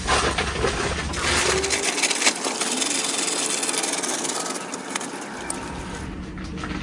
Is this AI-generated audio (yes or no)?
no